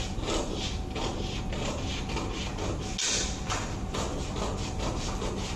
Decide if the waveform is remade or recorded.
recorded